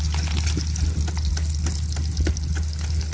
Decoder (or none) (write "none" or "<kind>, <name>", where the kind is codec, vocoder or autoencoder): none